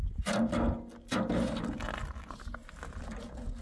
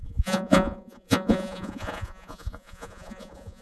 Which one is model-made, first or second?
second